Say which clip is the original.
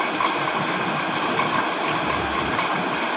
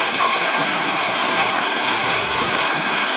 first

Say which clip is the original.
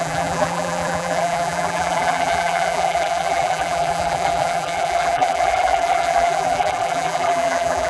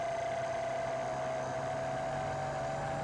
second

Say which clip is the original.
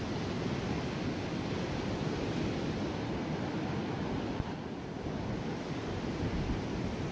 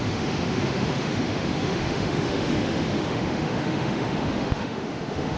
first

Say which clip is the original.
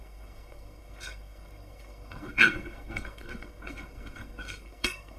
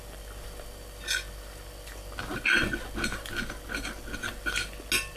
second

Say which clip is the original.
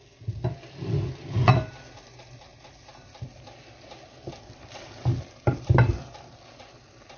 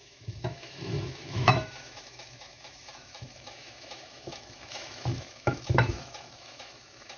first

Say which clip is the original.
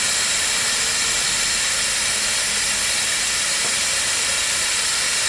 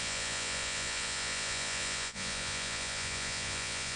first